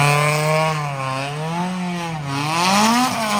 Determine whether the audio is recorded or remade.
recorded